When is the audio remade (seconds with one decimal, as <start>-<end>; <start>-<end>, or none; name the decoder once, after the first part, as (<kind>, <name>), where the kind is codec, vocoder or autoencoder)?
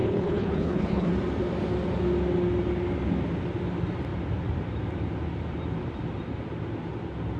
0.0-1.1 (codec, HILCodec)